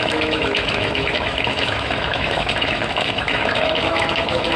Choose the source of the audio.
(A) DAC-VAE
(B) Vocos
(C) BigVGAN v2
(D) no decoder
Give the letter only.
A